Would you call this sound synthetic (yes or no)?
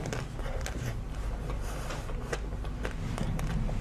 no